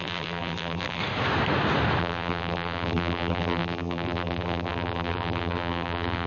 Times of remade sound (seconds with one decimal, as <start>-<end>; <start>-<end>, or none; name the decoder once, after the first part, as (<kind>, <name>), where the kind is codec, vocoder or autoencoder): 0.0-1.0 (vocoder, BigVGAN v2); 2.0-6.3